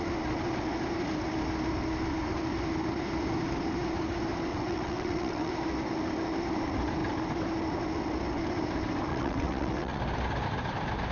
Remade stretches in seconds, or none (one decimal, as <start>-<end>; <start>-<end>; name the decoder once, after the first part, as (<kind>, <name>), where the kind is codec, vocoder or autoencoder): 4.5-5.5 (vocoder, WaveNeXt); 9.1-10.0